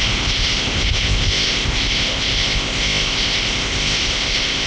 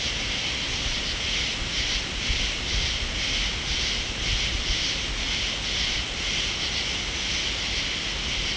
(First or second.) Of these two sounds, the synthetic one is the first